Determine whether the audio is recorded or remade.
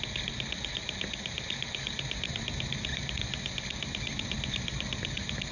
recorded